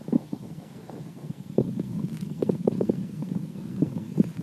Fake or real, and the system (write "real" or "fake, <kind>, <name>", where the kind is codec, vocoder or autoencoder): fake, codec, SNAC